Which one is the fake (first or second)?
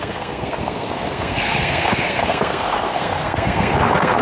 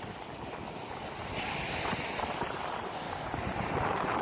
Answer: first